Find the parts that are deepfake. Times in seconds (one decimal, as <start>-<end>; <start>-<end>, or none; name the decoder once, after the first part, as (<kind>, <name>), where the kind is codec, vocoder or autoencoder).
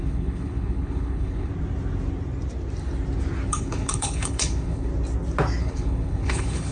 0.0-1.5 (codec, HILCodec); 3.5-4.9; 5.6-6.7